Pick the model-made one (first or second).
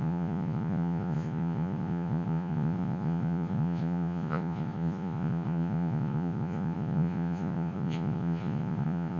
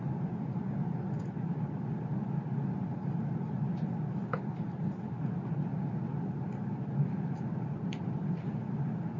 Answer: first